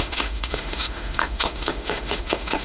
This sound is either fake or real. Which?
fake